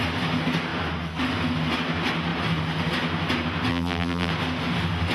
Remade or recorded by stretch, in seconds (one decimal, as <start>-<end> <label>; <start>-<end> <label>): 0.0-3.7 recorded; 3.7-4.3 remade; 4.3-5.1 recorded